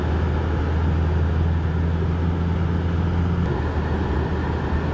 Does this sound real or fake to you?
real